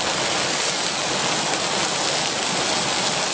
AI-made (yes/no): no